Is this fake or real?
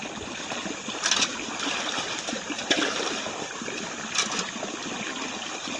real